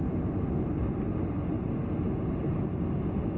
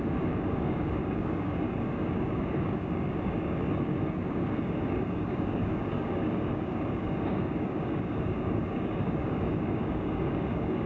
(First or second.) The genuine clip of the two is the first